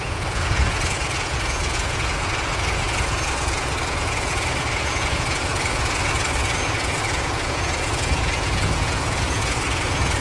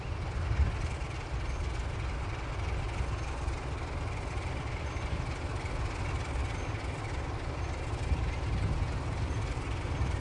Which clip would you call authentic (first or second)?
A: second